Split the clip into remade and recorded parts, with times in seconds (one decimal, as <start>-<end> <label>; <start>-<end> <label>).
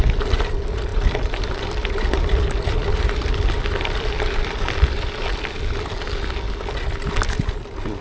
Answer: 0.0-0.9 recorded; 0.9-1.6 remade; 1.6-2.8 recorded; 2.8-5.9 remade; 5.9-8.0 recorded